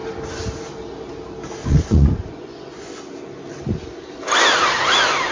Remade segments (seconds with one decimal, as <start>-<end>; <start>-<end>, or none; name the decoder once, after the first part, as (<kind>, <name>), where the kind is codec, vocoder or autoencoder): 1.6-2.9 (vocoder, Vocos)